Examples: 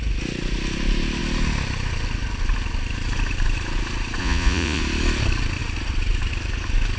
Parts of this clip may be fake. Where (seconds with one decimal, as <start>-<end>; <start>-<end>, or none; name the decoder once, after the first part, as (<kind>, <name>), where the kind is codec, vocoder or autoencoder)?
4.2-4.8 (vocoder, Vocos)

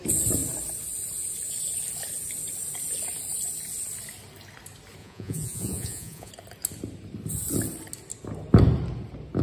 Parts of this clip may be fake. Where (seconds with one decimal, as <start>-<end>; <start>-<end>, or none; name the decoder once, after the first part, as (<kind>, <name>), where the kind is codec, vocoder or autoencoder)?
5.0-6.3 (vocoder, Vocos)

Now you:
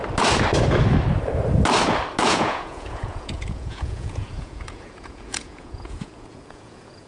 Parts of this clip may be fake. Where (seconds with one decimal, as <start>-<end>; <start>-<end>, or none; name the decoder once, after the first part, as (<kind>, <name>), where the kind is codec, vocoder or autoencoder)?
2.3-7.1 (vocoder, Vocos)

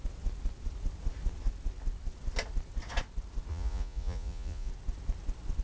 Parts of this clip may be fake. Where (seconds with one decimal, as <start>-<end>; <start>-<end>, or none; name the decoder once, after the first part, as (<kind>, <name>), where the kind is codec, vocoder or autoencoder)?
3.5-4.7 (vocoder, Vocos)